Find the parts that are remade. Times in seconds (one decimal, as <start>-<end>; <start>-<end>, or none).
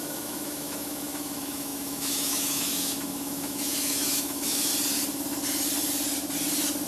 0.0-4.7